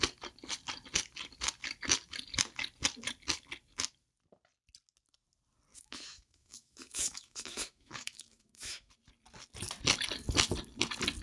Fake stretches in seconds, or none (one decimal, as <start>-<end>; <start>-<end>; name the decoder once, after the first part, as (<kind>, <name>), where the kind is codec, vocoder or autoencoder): 5.7-8.9 (autoencoder, DAC-VAE)